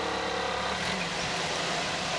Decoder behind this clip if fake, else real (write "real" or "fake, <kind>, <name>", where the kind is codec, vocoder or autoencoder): real